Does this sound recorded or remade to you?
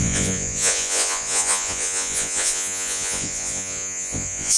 remade